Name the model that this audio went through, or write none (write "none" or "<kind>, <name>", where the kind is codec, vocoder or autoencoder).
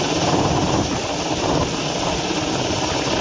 none